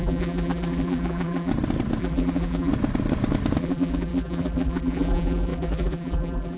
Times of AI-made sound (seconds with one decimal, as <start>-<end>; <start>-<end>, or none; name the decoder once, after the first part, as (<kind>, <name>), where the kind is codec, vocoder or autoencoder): 0.0-1.5 (vocoder, BigVGAN v2); 2.0-2.7; 3.6-6.6